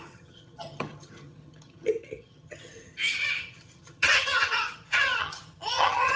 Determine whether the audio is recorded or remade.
remade